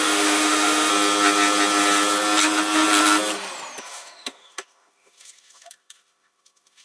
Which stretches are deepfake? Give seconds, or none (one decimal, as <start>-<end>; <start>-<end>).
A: 0.0-0.9; 3.8-6.8